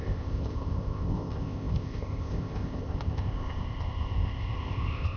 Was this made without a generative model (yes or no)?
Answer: no